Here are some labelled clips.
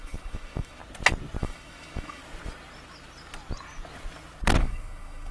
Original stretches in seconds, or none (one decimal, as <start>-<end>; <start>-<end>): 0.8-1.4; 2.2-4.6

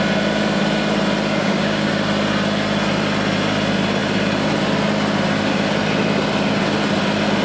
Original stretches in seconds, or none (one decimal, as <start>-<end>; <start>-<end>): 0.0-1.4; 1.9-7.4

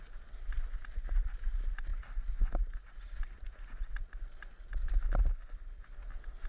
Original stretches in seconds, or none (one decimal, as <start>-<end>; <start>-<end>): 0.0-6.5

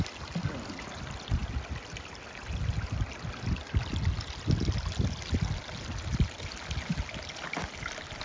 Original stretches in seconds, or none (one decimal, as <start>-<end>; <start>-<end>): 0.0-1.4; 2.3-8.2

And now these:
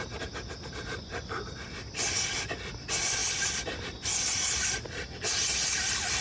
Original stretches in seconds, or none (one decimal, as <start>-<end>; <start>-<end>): 0.0-6.2